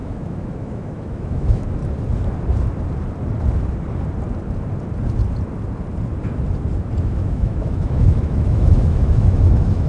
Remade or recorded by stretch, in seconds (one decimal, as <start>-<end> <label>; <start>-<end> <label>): 0.0-1.8 remade; 1.8-7.0 recorded; 7.0-9.9 remade